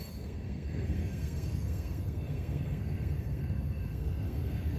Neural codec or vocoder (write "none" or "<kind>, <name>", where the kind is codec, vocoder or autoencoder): codec, SNAC